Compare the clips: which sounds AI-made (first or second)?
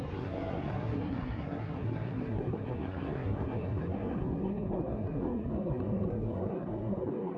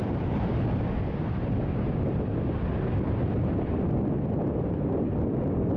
first